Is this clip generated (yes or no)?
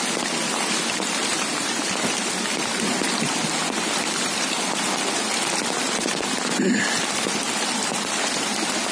yes